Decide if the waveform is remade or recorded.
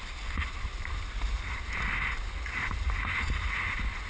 recorded